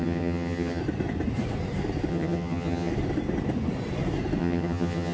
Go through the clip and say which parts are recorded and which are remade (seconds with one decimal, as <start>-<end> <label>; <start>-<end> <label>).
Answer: 0.0-0.8 remade; 0.8-2.1 recorded; 2.1-2.9 remade; 2.9-4.4 recorded; 4.4-5.1 remade